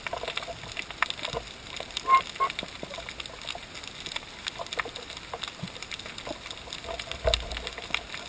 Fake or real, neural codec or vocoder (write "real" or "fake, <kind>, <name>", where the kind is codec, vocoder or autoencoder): real